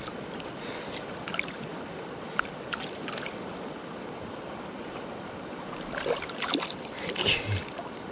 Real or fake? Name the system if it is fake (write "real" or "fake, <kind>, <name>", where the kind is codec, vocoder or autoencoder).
real